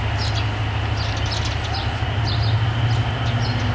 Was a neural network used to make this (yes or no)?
no